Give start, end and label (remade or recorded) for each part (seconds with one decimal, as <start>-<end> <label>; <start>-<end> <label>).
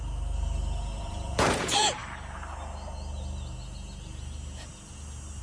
0.0-1.0 recorded; 1.0-2.0 remade; 2.0-5.4 recorded